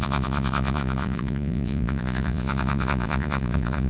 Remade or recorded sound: remade